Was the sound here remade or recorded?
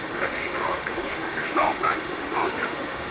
remade